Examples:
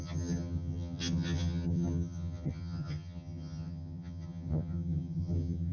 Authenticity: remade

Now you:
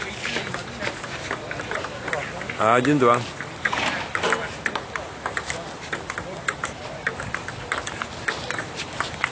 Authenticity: recorded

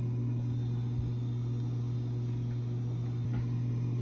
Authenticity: recorded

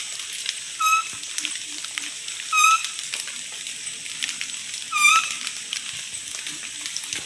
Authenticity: recorded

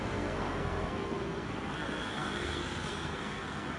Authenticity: remade